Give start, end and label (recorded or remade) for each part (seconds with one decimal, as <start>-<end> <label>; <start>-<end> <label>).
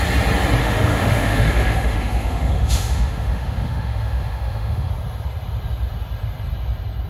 0.0-0.6 recorded; 0.6-4.9 remade; 4.9-7.1 recorded